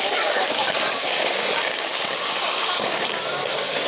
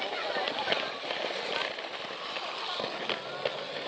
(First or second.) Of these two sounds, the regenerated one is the first